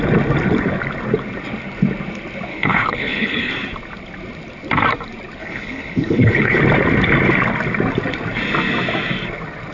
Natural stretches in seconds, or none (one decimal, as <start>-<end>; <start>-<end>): 0.0-2.5; 3.5-5.4; 6.6-9.7